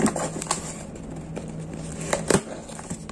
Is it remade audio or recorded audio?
recorded